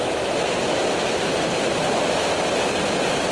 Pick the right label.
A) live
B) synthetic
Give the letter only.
A